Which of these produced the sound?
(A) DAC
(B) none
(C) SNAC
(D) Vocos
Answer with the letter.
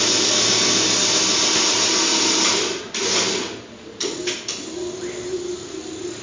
B